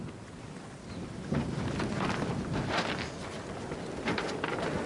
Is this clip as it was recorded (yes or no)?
yes